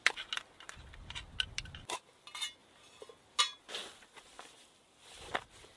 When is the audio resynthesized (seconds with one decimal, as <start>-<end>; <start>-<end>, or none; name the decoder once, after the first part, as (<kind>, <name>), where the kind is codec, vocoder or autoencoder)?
none